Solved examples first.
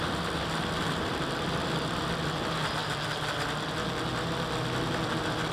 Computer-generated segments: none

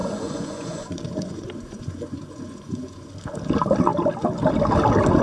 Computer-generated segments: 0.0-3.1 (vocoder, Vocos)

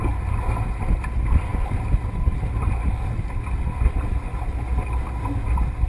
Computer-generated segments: none